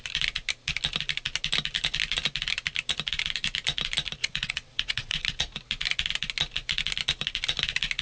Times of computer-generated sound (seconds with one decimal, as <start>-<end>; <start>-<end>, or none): 4.2-5.4